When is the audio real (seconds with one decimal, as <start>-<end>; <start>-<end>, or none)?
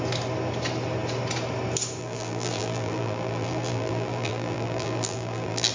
0.0-2.0